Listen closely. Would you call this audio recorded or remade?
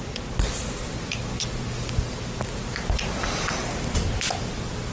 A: recorded